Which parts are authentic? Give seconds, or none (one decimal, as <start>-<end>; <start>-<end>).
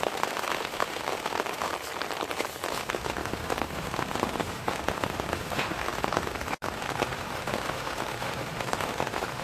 1.7-2.7